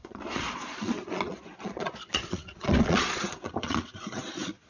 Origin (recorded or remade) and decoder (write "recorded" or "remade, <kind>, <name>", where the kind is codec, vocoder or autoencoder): remade, vocoder, Vocos